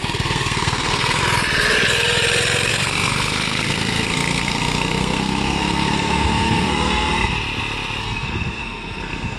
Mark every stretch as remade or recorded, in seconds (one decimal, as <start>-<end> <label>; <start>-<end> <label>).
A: 0.0-1.2 remade; 1.2-2.7 recorded; 2.7-7.3 remade; 7.3-8.0 recorded; 8.0-9.4 remade

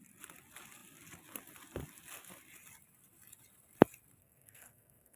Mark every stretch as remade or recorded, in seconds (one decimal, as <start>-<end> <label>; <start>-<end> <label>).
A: 0.0-4.2 recorded; 4.2-5.2 remade